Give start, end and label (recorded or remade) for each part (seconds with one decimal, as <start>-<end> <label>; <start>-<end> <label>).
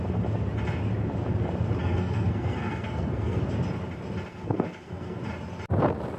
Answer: 0.0-1.8 recorded; 1.8-3.4 remade; 3.4-4.3 recorded; 4.3-5.2 remade; 5.2-6.2 recorded